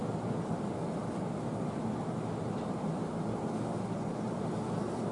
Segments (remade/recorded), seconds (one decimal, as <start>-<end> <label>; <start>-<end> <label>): 0.0-5.1 recorded